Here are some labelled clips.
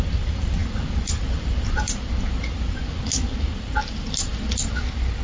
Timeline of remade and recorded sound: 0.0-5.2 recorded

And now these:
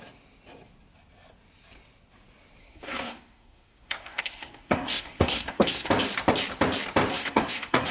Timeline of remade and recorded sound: 0.0-2.6 recorded; 2.6-5.9 remade; 5.9-7.1 recorded; 7.1-7.9 remade

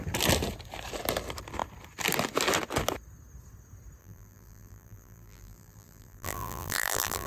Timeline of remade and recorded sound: 0.0-4.0 recorded; 4.0-7.3 remade

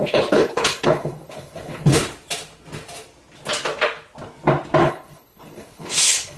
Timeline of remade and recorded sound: 0.0-2.0 remade; 2.0-4.8 recorded; 4.8-6.4 remade